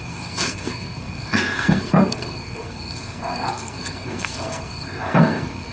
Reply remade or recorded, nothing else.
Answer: remade